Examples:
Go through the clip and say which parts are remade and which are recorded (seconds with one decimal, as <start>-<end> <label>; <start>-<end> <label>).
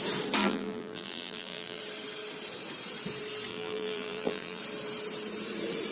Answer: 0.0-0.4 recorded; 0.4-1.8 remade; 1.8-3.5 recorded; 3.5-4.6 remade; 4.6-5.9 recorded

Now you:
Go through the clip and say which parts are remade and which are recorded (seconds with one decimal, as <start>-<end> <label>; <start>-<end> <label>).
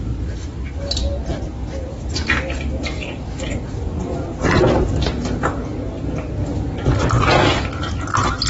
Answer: 0.0-8.5 recorded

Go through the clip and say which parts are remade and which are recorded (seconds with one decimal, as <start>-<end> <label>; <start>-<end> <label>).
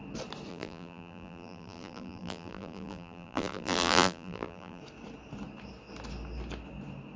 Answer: 0.0-0.5 recorded; 0.5-4.8 remade; 4.8-7.2 recorded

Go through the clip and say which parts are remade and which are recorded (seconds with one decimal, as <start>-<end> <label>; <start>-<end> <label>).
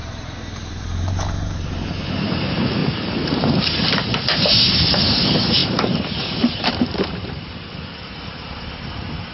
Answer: 0.0-9.3 remade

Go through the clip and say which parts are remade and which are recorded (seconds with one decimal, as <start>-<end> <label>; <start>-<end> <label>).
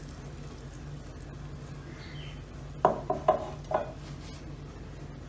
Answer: 0.0-5.3 recorded